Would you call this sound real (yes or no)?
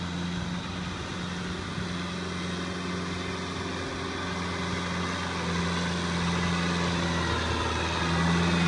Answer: yes